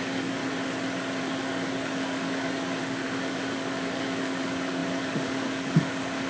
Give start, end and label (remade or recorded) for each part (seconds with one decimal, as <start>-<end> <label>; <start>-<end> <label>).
0.0-0.4 remade; 0.4-1.2 recorded; 1.2-6.3 remade